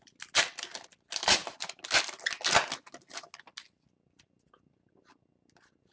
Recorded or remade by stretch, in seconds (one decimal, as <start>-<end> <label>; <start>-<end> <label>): 0.0-5.9 recorded